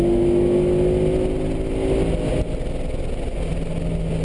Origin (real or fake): real